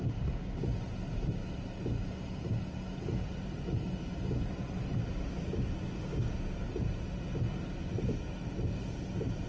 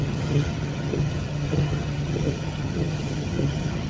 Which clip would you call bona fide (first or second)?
first